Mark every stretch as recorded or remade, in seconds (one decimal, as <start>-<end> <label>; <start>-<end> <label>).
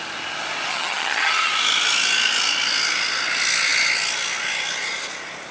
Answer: 0.0-0.7 recorded; 0.7-1.5 remade; 1.5-5.5 recorded